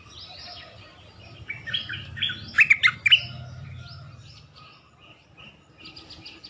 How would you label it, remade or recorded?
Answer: recorded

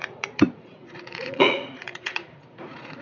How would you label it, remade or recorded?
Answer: remade